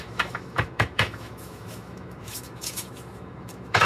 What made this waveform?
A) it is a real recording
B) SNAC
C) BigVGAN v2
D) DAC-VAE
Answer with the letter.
D